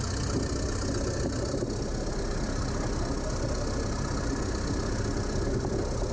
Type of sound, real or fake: real